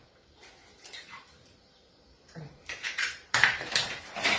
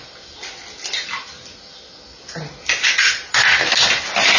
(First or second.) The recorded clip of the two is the second